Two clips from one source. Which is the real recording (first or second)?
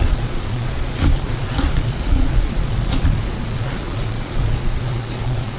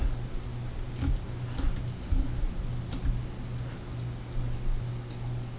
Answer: second